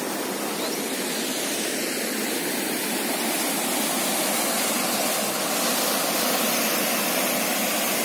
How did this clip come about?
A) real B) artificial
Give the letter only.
A